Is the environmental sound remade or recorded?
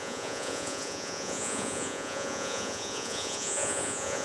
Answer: remade